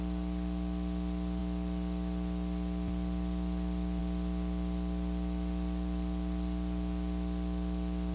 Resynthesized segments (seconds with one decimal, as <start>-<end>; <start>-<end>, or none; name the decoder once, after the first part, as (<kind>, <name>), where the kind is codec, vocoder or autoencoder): none